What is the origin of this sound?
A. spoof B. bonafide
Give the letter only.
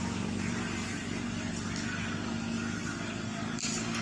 B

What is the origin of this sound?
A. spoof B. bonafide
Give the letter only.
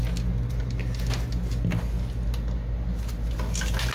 B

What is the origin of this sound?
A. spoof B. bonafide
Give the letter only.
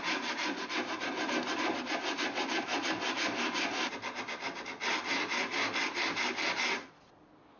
B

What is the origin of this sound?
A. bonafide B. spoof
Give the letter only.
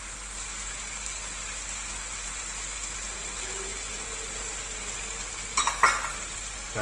A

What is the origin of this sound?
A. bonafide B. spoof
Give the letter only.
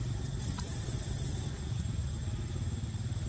A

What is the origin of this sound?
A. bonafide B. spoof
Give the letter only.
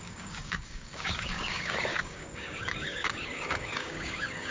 B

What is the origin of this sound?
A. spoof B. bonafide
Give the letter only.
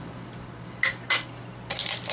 B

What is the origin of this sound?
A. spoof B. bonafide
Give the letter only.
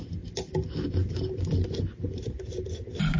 B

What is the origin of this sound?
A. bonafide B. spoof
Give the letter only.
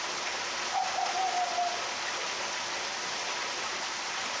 A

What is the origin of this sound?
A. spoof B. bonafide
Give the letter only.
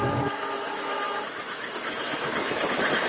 A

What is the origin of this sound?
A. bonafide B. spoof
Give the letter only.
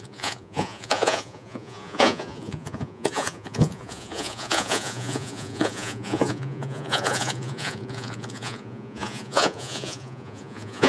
B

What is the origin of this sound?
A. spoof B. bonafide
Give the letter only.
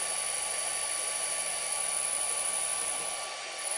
B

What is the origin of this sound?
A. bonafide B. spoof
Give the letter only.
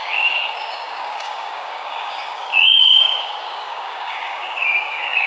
B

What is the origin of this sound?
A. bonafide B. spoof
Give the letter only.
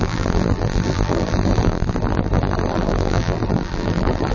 B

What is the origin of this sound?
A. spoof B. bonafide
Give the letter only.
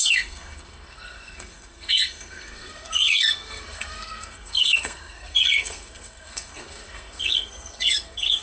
A